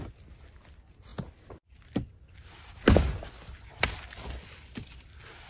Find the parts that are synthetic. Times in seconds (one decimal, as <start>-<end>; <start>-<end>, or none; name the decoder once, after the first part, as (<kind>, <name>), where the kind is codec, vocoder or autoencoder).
none